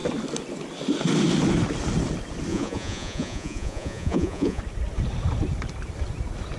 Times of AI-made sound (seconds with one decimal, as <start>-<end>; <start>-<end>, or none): 2.5-4.6